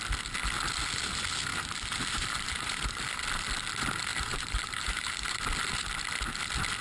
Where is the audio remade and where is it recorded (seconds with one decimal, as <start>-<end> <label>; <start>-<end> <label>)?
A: 0.0-1.5 recorded; 1.5-3.2 remade; 3.2-4.1 recorded; 4.1-5.4 remade; 5.4-6.8 recorded